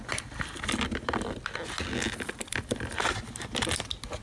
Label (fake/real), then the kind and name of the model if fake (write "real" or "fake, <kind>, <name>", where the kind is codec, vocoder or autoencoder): real